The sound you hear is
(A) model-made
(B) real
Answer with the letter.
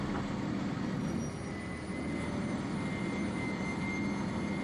B